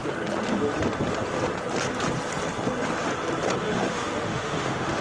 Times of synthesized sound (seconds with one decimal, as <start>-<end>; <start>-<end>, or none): 3.6-5.0